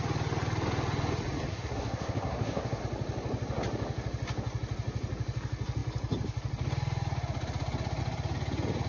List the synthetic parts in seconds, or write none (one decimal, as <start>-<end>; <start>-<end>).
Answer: 1.5-2.8